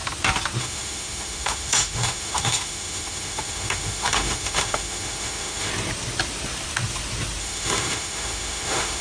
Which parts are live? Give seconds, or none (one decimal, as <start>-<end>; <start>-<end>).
0.0-0.6; 5.7-7.4